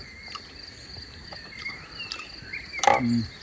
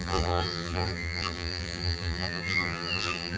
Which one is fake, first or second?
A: second